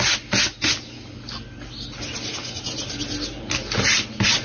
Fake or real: real